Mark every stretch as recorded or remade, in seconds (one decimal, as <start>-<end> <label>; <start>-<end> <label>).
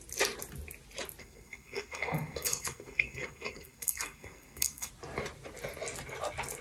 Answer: 0.0-1.2 recorded; 1.2-4.9 remade; 4.9-6.6 recorded